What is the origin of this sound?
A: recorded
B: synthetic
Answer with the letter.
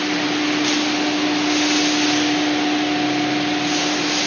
A